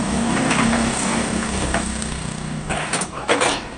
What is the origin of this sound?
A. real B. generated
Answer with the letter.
B